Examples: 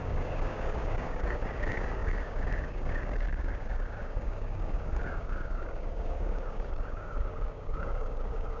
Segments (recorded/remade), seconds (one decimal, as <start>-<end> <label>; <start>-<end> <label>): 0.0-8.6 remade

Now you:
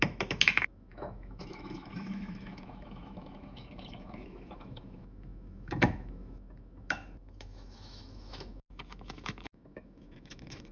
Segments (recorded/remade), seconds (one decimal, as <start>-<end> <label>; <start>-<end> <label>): 0.0-10.7 remade

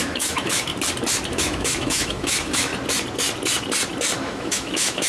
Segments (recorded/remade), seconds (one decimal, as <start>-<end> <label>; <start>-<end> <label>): 0.0-0.7 remade; 0.7-1.3 recorded; 1.3-2.7 remade; 2.7-4.2 recorded; 4.2-5.1 remade

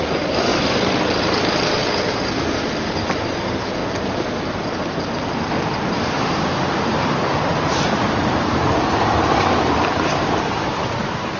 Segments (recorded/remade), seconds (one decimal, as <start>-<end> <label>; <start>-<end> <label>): 0.0-0.5 remade; 0.5-1.2 recorded; 1.2-1.8 remade; 1.8-2.8 recorded; 2.8-3.8 remade; 3.8-4.7 recorded; 4.7-11.4 remade

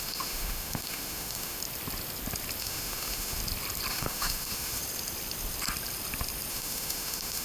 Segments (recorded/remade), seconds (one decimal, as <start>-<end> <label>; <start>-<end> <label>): 0.0-1.6 remade; 1.6-2.6 recorded; 2.6-3.4 remade; 3.4-3.9 recorded; 3.9-4.8 remade; 4.8-6.5 recorded; 6.5-7.4 remade

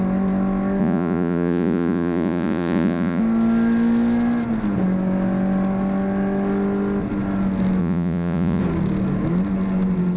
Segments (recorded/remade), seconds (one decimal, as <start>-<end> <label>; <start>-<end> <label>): 0.0-0.8 recorded; 0.8-3.2 remade; 3.2-7.8 recorded; 7.8-8.6 remade; 8.6-10.2 recorded

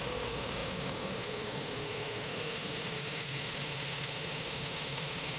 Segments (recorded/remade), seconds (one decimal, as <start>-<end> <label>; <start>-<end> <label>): 0.0-5.4 remade

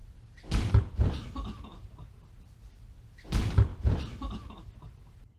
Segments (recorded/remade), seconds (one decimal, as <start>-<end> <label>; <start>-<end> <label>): 0.0-5.4 recorded